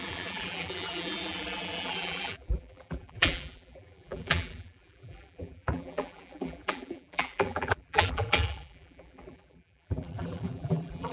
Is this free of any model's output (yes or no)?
no